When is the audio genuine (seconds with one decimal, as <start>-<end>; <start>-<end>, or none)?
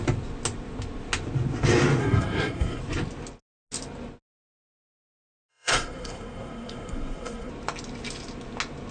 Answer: 0.0-2.0; 2.8-5.5; 7.5-8.9